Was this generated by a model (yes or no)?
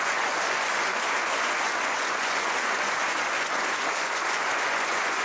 yes